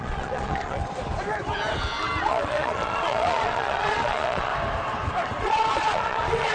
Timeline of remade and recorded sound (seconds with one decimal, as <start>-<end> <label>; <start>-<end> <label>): 0.0-0.8 remade; 0.8-2.2 recorded; 2.2-4.5 remade; 4.5-5.4 recorded; 5.4-6.5 remade